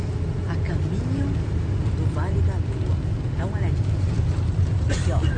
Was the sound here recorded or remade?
recorded